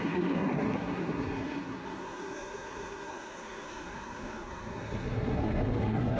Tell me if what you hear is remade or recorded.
remade